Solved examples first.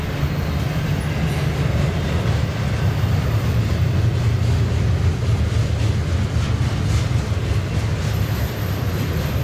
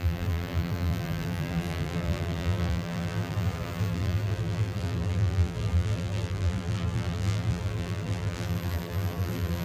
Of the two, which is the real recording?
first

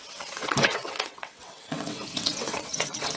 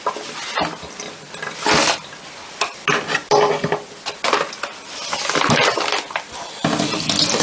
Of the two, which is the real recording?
second